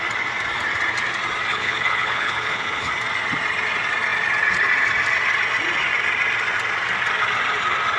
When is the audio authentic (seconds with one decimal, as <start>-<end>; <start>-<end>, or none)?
0.0-1.5; 2.9-8.0